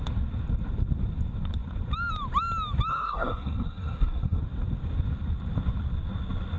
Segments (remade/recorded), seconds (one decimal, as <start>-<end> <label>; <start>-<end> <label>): 0.0-2.9 recorded; 2.9-4.4 remade; 4.4-6.6 recorded